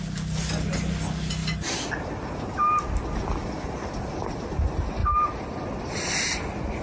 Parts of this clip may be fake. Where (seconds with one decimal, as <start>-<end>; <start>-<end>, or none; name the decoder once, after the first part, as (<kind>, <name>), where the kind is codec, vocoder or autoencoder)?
none